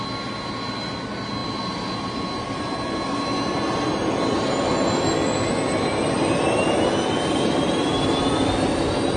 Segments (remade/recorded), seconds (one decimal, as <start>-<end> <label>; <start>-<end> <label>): 0.0-9.2 recorded